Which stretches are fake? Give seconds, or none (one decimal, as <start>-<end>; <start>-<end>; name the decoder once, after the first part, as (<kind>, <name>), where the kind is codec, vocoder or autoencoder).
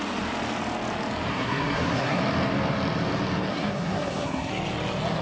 1.3-2.2 (codec, SNAC); 3.5-4.5